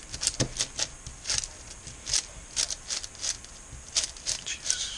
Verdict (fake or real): real